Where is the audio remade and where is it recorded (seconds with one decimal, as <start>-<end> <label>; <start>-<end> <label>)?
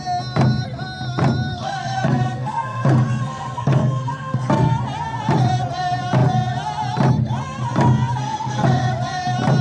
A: 0.0-1.5 recorded; 1.5-4.7 remade; 4.7-8.2 recorded; 8.2-8.9 remade; 8.9-9.6 recorded